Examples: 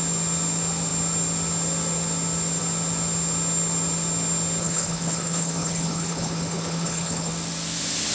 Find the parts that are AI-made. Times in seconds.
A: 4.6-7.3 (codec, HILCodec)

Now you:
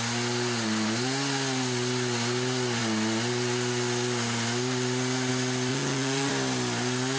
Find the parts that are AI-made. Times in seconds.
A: 5.7-6.3 (vocoder, Vocos)

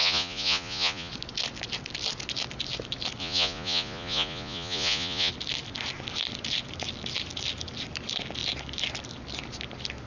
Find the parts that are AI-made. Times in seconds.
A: 0.0-1.1 (vocoder, Vocos); 3.2-5.3